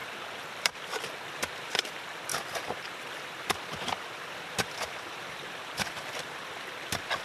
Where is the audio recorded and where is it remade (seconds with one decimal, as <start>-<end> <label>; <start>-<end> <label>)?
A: 0.0-0.5 recorded; 0.5-7.2 remade